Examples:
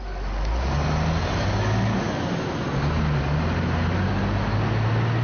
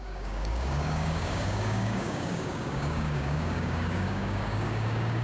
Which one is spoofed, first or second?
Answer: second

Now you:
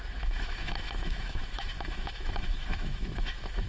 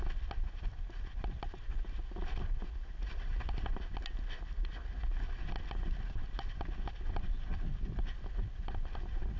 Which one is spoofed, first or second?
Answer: first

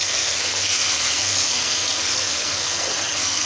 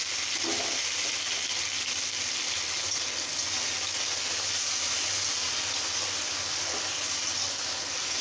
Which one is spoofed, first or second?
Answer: first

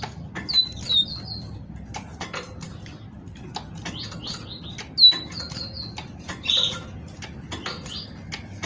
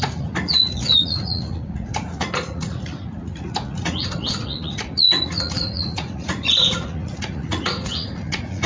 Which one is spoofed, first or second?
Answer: second